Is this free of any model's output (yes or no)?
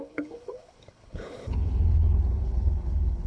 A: no